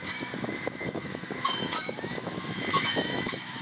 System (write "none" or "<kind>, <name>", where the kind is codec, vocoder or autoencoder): autoencoder, DAC-VAE